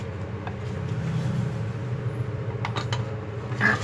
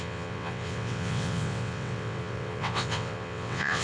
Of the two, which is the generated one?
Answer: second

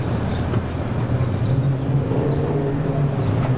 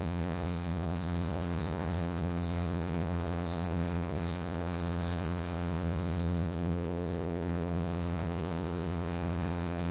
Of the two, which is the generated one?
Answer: second